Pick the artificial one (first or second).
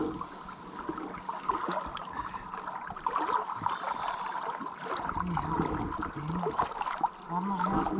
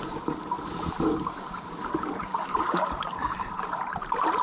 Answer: second